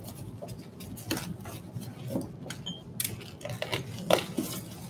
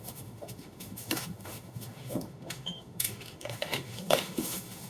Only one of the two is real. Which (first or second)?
first